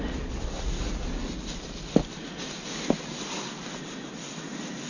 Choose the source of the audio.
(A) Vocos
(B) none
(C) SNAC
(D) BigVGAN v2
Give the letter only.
B